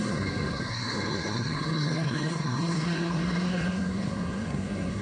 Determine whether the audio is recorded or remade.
remade